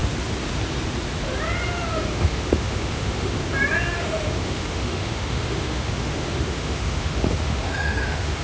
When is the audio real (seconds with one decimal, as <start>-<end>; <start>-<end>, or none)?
0.0-1.9; 3.4-4.0